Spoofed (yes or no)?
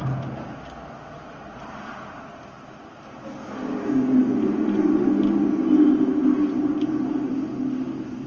no